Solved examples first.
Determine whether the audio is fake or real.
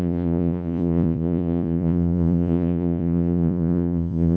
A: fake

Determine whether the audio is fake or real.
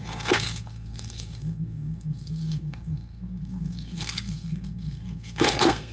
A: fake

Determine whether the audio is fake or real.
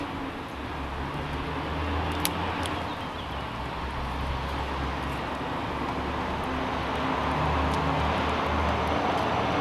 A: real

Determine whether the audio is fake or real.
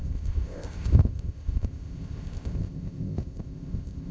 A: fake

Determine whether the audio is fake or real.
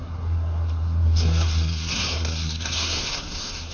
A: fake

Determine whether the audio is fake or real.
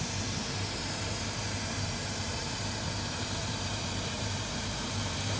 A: fake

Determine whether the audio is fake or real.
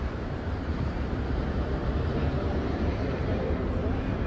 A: fake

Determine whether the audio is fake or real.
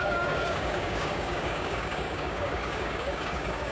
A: fake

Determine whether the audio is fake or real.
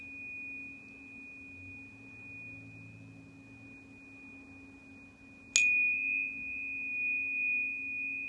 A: real